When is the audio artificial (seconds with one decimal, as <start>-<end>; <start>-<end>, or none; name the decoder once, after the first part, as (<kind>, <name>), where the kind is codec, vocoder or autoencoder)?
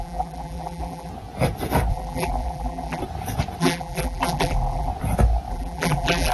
0.0-1.1 (vocoder, BigVGAN v2); 1.9-3.0; 3.6-4.9; 5.5-6.3